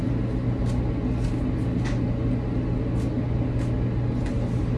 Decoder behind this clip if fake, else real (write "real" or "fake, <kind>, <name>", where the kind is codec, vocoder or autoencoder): real